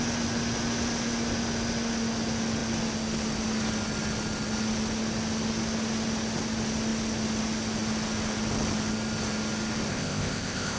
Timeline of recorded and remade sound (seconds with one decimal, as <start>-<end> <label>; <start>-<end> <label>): 0.0-9.9 recorded; 9.9-10.8 remade